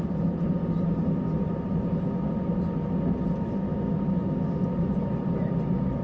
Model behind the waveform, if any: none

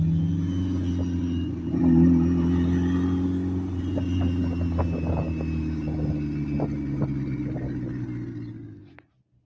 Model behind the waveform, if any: none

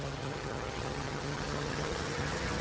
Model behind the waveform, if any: vocoder, HiFi-GAN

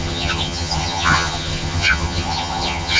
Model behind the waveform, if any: vocoder, HiFi-GAN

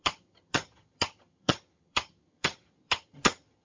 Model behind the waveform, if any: vocoder, HiFi-GAN